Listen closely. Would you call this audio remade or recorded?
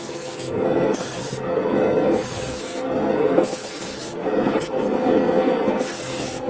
remade